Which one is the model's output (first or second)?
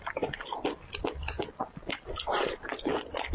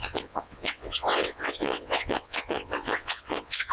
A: second